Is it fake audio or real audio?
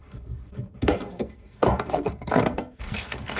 fake